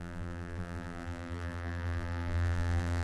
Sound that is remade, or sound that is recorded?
remade